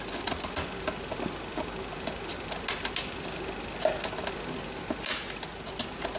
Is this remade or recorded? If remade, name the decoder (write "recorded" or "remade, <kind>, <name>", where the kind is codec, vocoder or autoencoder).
recorded